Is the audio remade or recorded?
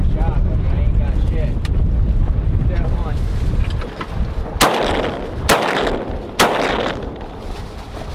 recorded